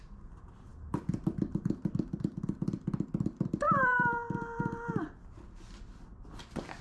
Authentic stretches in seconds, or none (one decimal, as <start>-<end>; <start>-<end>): 0.0-0.7; 4.7-6.8